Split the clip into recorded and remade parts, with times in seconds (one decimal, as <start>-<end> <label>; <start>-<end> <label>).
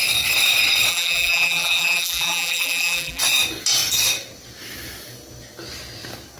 0.0-0.9 recorded; 0.9-3.2 remade; 3.2-6.4 recorded